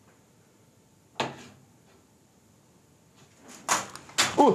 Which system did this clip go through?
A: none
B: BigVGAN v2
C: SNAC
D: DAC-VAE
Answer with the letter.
A